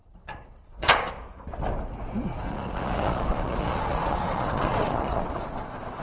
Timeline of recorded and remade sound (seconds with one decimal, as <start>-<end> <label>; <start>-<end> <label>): 0.0-1.1 remade; 1.1-2.3 recorded; 2.3-6.0 remade